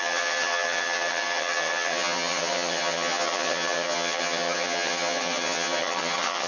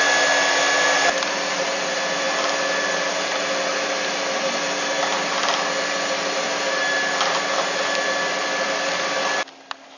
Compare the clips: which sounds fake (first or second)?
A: first